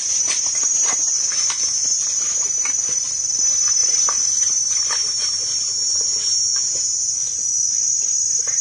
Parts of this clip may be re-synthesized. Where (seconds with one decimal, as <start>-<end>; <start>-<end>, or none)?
3.8-6.5